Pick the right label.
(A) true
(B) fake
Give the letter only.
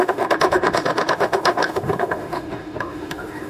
B